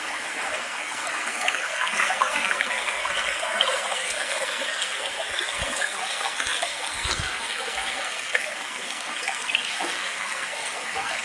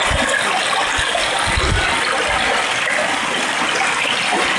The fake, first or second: first